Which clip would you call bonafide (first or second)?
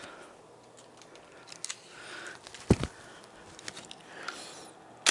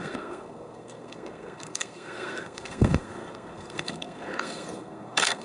first